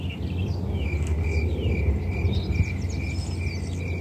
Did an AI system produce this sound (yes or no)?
no